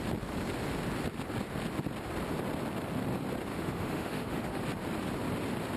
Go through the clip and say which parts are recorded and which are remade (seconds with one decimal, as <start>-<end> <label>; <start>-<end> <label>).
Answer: 0.0-3.5 recorded; 3.5-4.6 remade; 4.6-5.8 recorded